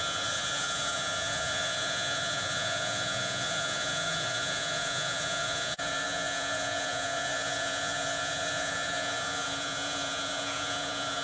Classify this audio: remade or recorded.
remade